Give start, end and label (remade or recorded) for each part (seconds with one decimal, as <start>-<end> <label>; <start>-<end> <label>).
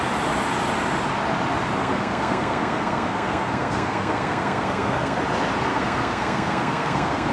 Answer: 0.0-1.8 recorded; 1.8-5.2 remade; 5.2-5.7 recorded; 5.7-7.3 remade